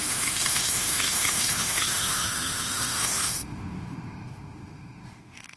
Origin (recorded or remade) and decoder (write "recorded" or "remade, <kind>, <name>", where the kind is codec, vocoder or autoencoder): remade, autoencoder, DAC-VAE